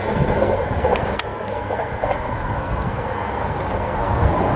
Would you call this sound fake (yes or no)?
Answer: yes